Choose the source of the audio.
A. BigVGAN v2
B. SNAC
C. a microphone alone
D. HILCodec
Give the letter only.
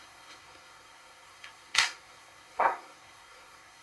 B